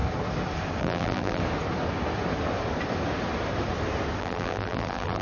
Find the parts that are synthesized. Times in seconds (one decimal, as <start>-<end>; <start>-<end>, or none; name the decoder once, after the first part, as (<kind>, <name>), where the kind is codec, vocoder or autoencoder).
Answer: 0.8-1.4 (vocoder, BigVGAN v2); 4.2-5.2